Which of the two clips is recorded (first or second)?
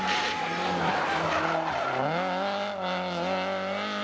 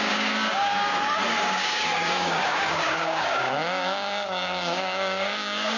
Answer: first